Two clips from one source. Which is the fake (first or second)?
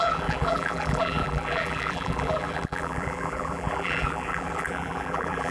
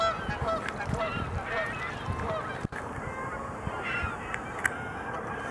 first